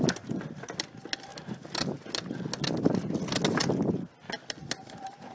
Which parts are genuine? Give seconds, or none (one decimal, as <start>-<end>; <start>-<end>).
0.0-5.3